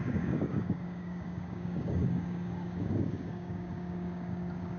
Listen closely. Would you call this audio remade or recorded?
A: remade